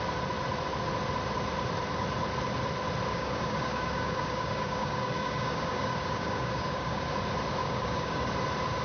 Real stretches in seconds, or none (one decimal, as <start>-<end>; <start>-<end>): 0.0-3.1; 7.1-7.6; 8.3-8.8